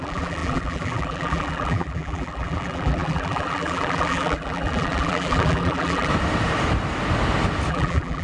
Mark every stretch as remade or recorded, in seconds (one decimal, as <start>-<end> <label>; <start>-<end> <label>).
0.0-6.1 remade; 6.1-7.7 recorded; 7.7-8.2 remade

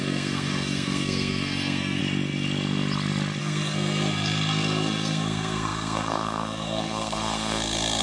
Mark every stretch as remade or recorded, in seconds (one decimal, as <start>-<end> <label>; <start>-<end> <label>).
0.0-2.0 remade; 2.0-3.4 recorded; 3.4-8.0 remade